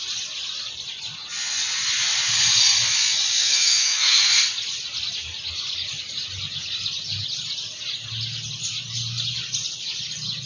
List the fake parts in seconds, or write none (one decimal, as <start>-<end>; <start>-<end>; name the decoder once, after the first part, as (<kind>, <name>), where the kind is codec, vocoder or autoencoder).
3.4-4.2 (autoencoder, DAC-VAE)